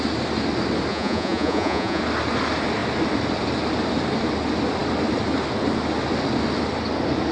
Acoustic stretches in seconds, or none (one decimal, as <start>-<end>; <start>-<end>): 0.0-0.9; 2.0-7.3